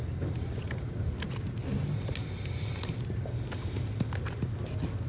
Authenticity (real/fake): real